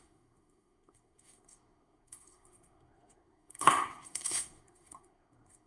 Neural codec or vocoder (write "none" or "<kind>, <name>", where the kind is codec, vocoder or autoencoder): codec, SNAC